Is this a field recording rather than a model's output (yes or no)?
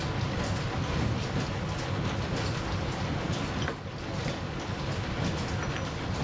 yes